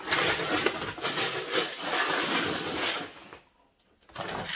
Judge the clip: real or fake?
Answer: real